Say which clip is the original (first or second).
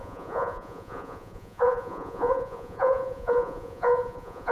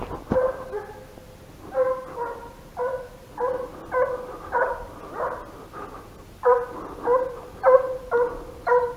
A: second